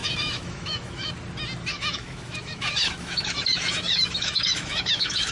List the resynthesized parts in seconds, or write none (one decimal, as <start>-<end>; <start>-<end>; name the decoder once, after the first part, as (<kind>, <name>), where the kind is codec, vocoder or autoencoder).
0.0-1.1 (autoencoder, DAC-VAE); 1.7-5.3